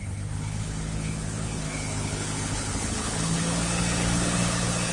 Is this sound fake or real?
fake